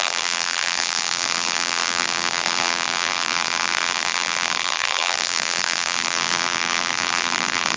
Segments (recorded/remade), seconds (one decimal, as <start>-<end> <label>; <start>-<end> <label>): 0.0-7.8 remade